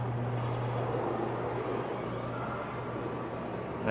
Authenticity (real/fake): real